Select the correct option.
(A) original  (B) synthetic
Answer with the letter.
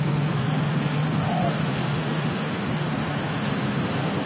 B